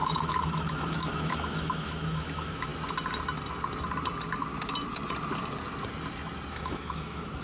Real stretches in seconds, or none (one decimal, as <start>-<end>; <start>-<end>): 2.7-6.5